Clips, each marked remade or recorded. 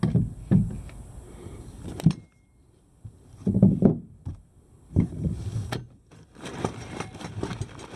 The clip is recorded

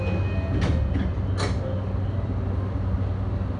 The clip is recorded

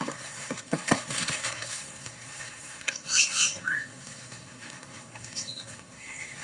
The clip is remade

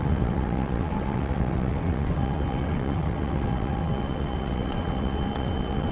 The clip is remade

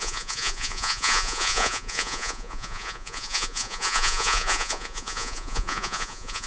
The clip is remade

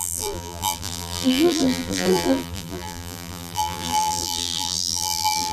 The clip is remade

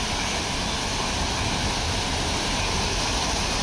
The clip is recorded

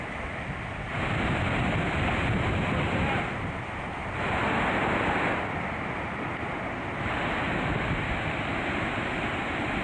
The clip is recorded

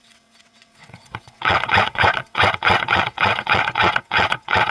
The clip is remade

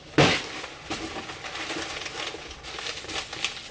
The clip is recorded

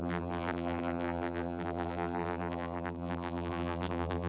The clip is remade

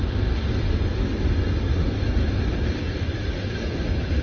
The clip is recorded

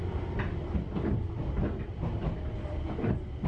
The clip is recorded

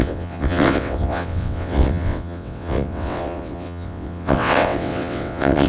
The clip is remade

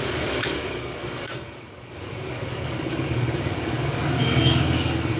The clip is remade